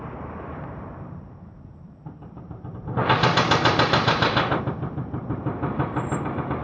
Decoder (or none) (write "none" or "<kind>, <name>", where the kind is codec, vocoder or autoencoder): vocoder, BigVGAN v2